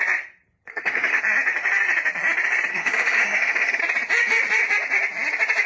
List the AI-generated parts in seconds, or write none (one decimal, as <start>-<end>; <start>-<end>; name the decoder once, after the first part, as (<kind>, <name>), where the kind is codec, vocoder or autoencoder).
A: 0.7-1.2 (codec, SNAC); 2.7-3.8